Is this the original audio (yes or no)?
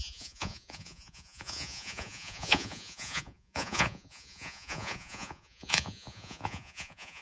no